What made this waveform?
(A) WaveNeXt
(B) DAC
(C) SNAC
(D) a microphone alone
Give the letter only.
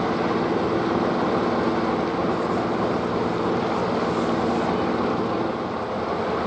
D